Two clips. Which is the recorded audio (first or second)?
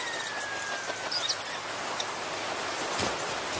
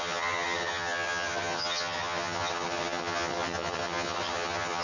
first